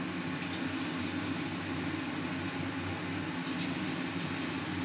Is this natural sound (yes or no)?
yes